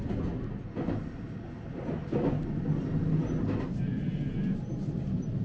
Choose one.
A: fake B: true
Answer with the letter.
B